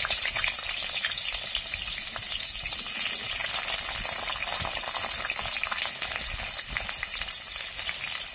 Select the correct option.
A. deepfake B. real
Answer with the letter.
B